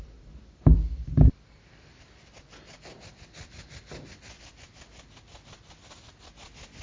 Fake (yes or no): no